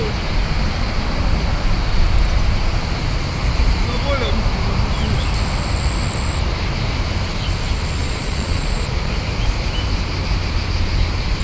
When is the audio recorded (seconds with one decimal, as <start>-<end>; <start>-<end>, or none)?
0.0-8.0; 9.1-11.4